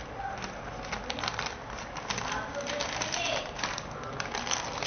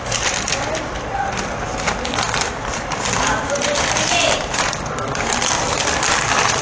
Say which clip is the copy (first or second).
second